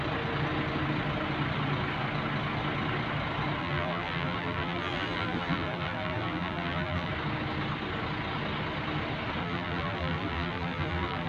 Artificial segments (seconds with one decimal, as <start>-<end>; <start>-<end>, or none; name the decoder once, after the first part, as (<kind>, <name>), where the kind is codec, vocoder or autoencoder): 3.6-7.1 (vocoder, BigVGAN v2); 9.4-11.3